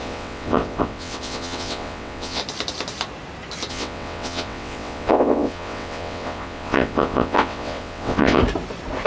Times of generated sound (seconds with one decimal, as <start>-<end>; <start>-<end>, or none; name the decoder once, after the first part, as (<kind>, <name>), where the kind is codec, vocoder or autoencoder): 0.0-2.4 (vocoder, WaveNeXt); 3.7-8.4